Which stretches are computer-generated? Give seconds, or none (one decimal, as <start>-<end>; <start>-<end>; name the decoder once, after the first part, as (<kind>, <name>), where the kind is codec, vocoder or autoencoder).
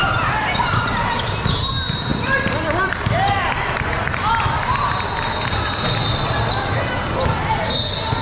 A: 0.0-1.3 (vocoder, BigVGAN v2); 2.1-4.7